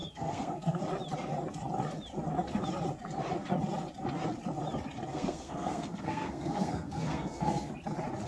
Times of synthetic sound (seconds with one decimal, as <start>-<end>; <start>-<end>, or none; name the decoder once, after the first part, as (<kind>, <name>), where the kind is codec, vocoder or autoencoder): 0.0-0.8 (codec, SNAC); 5.1-7.7